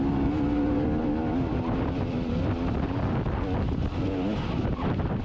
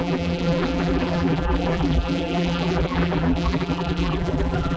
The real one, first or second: first